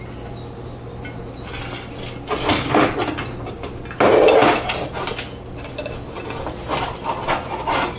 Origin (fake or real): real